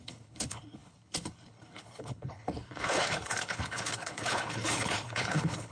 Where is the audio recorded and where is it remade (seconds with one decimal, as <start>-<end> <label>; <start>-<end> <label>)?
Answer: 0.0-5.7 remade